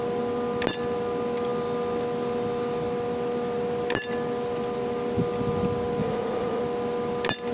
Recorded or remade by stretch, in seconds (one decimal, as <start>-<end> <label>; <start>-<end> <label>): 0.0-6.0 recorded; 6.0-6.6 remade; 6.6-7.5 recorded